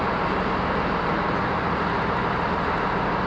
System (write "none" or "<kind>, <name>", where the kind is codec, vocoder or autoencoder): none